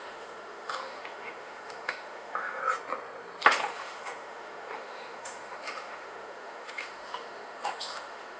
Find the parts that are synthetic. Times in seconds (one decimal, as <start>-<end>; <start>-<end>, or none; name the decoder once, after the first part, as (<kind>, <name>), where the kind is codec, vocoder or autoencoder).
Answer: 0.0-2.6 (autoencoder, DAC-VAE); 3.6-8.4